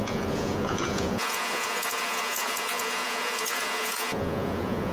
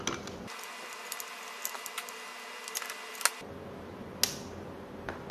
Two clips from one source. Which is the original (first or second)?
second